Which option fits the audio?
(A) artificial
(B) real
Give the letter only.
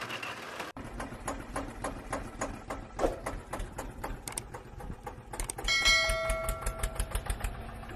B